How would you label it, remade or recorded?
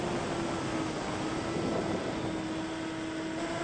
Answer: recorded